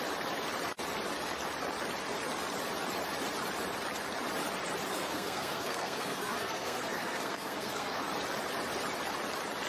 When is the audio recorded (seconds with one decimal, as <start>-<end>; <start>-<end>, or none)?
0.0-4.9; 8.0-9.7